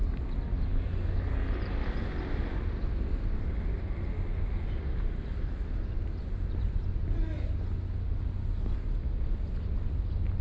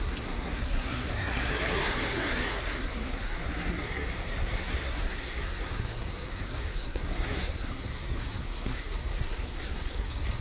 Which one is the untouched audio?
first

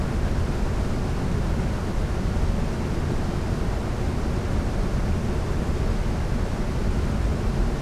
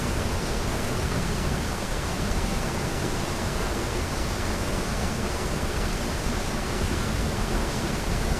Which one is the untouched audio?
first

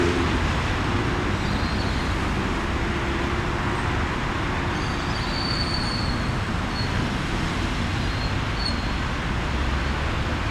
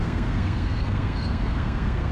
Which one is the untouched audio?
first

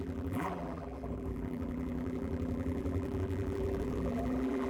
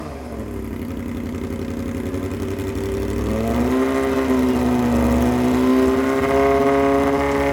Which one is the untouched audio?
second